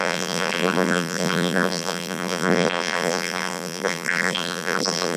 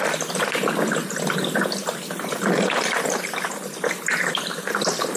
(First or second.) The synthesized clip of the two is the first